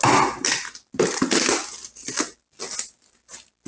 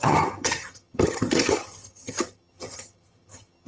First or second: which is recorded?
first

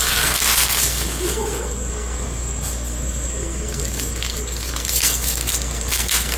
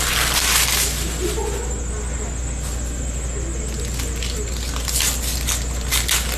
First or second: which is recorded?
second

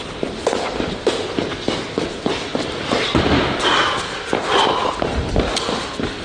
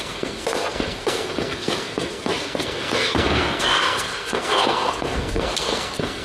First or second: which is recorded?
first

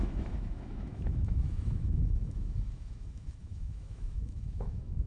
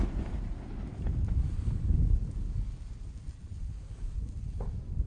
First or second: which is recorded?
second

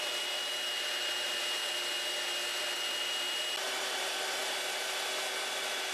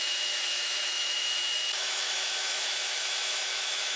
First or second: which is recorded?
first